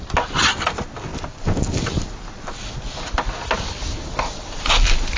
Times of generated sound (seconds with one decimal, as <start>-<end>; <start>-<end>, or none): none